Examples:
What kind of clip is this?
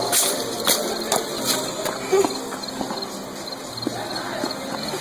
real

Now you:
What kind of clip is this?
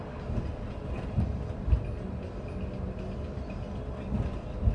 real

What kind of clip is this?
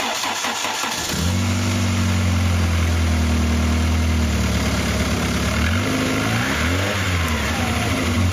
real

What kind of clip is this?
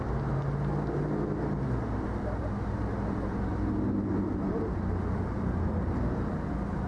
real